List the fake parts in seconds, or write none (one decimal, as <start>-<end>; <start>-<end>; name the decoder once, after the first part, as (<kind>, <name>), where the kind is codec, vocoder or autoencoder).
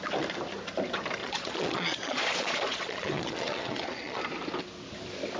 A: 1.2-4.2 (vocoder, Vocos)